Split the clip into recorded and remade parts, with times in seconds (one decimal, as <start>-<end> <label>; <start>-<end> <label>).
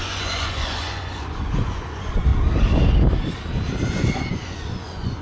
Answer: 0.0-2.3 remade; 2.3-4.3 recorded; 4.3-5.2 remade